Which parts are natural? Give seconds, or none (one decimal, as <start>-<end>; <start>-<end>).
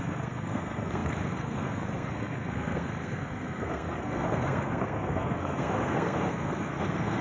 none